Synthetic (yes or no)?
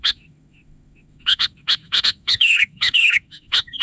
yes